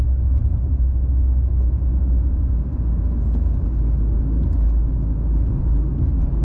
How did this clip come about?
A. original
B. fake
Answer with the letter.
A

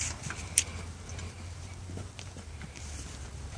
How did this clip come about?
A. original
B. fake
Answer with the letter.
A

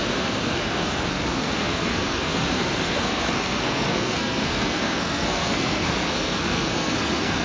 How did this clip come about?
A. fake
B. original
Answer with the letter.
A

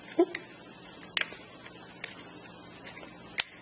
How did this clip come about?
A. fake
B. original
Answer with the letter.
B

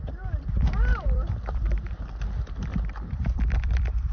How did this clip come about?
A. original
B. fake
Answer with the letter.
B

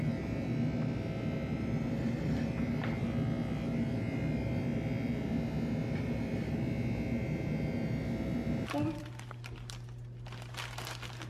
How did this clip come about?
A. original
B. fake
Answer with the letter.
A